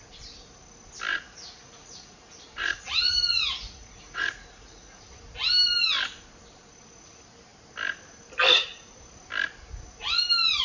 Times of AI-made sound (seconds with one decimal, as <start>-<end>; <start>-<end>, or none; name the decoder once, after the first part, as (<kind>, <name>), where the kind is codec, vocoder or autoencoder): 1.1-5.0 (vocoder, Vocos)